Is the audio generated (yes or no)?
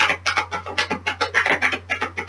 no